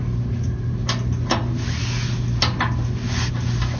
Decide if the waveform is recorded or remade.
recorded